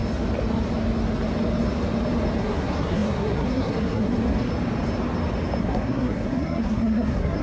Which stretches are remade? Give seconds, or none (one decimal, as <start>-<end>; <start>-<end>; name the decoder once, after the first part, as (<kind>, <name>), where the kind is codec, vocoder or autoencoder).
2.4-4.5 (codec, SNAC); 5.6-7.4